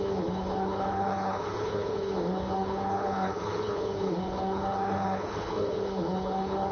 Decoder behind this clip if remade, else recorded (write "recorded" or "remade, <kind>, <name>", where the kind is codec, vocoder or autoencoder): remade, codec, HILCodec